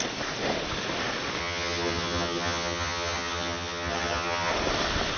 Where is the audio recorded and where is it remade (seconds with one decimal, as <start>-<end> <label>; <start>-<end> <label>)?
0.0-1.4 recorded; 1.4-4.5 remade; 4.5-5.2 recorded